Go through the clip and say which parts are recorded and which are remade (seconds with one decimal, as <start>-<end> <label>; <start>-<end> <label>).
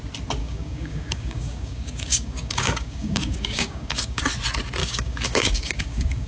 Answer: 0.0-0.4 recorded; 0.4-4.2 remade; 4.2-4.8 recorded; 4.8-6.3 remade